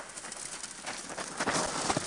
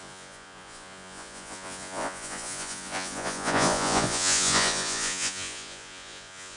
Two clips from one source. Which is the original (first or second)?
first